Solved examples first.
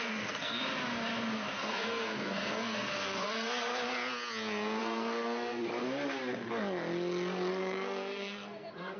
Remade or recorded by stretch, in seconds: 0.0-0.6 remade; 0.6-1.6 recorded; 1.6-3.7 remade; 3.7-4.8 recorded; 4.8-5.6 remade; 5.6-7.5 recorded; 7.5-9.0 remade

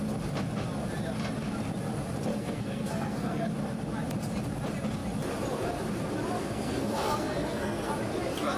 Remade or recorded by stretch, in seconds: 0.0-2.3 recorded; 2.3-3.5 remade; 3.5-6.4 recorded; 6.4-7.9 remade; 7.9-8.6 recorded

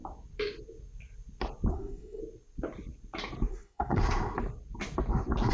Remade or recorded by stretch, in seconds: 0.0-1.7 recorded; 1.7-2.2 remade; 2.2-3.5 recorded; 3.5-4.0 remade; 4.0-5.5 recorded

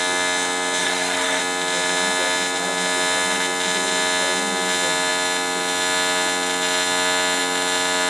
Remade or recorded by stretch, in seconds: 0.0-0.8 recorded; 0.8-1.4 remade; 1.4-8.1 recorded

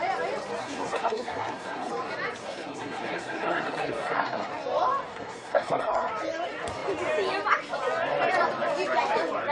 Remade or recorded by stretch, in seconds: 0.0-0.6 recorded; 0.6-1.9 remade; 1.9-2.4 recorded; 2.4-4.5 remade; 4.5-5.1 recorded; 5.1-6.1 remade; 6.1-9.5 recorded